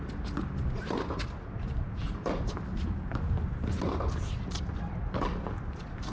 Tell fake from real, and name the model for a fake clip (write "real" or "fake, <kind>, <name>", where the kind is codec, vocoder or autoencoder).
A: real